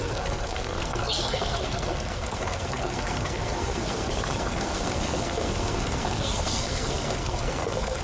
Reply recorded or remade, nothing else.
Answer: remade